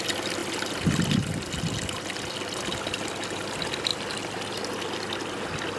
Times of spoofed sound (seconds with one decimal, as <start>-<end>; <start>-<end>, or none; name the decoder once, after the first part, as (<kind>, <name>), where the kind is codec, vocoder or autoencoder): 3.9-4.6 (vocoder, BigVGAN v2)